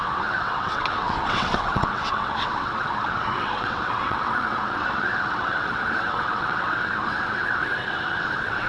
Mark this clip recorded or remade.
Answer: remade